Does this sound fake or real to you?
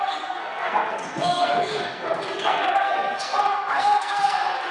fake